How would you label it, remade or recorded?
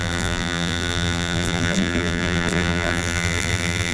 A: remade